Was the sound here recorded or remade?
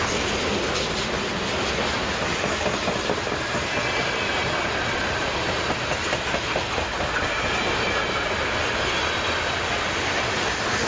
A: recorded